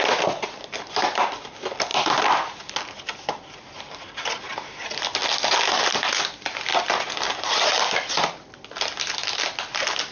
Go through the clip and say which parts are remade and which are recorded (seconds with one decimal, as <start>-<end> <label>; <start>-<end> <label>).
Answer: 0.0-10.1 recorded